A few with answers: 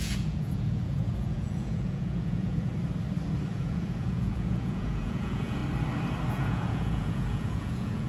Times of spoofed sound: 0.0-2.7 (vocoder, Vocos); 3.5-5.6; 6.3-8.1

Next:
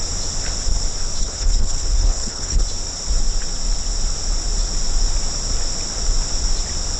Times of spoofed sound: 1.2-2.6 (codec, HILCodec)

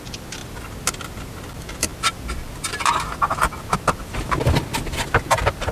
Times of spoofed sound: 0.0-0.4 (vocoder, BigVGAN v2); 1.5-5.7